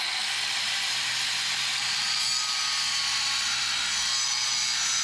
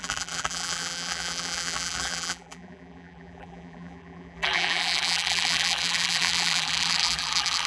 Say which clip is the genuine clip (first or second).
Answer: first